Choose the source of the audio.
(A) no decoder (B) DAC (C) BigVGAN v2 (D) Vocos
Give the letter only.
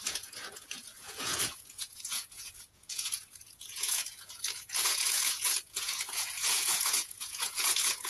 D